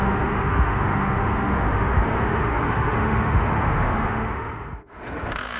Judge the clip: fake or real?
fake